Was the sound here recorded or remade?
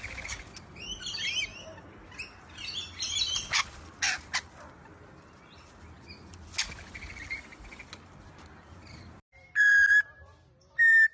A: recorded